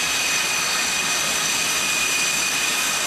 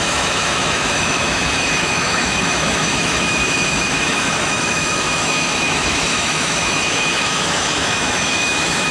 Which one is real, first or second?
first